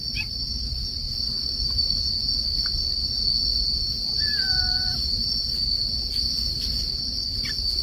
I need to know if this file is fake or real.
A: real